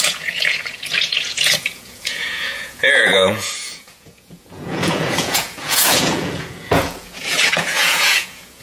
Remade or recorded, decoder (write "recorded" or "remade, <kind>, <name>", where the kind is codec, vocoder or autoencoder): remade, vocoder, Vocos